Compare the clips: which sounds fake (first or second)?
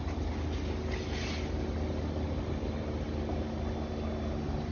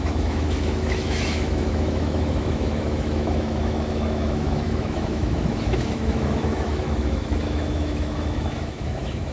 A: second